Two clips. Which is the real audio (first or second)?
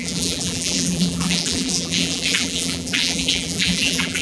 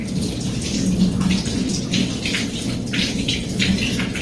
second